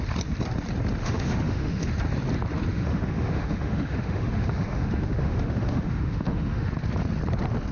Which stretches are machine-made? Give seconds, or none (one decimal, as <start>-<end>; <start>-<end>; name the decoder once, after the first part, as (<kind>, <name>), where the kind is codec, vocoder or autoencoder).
1.0-1.9 (autoencoder, DAC-VAE); 2.7-6.7